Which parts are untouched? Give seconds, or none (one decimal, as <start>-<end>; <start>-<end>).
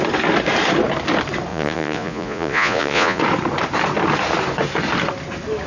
0.0-1.5; 3.2-5.7